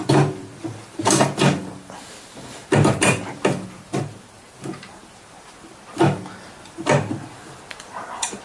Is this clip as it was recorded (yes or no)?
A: yes